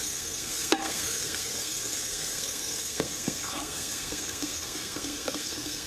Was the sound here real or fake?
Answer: fake